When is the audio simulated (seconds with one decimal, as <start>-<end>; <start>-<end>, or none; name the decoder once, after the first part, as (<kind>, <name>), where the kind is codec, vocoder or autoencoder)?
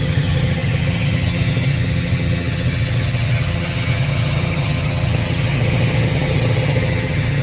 0.0-7.4 (vocoder, HiFi-GAN)